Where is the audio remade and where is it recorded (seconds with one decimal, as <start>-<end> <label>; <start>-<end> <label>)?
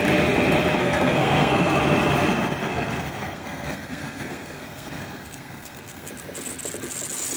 0.0-0.8 recorded; 0.8-1.8 remade; 1.8-2.6 recorded; 2.6-6.1 remade; 6.1-7.4 recorded